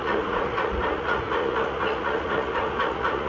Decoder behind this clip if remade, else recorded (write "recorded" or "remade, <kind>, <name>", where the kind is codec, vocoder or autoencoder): remade, vocoder, Vocos